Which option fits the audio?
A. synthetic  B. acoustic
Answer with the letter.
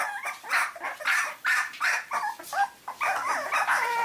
B